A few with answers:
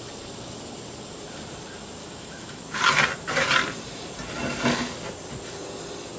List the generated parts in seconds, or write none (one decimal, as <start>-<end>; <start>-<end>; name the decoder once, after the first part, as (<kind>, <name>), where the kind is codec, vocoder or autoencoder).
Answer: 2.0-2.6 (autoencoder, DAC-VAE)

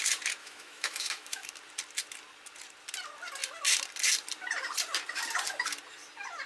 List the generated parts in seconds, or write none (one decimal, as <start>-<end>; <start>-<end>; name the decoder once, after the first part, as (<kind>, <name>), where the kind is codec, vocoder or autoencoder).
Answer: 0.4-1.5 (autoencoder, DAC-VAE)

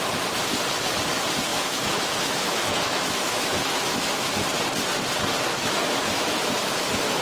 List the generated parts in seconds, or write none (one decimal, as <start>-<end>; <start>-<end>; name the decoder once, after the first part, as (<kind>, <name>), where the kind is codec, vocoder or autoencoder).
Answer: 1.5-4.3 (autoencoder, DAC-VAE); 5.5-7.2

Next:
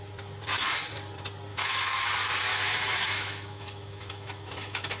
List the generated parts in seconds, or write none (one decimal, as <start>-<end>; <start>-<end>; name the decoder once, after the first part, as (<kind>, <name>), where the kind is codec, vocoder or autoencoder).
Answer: 1.5-2.1 (autoencoder, DAC-VAE); 2.5-5.0

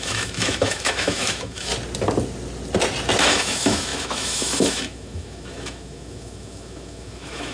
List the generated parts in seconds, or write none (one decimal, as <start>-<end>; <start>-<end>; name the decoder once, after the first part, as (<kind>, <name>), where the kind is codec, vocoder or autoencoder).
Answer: 0.0-1.7 (autoencoder, DAC-VAE); 3.2-7.5

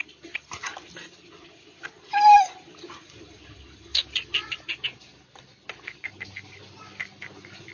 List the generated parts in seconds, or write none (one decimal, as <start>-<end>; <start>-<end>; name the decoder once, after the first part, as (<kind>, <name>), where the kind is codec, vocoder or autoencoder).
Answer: none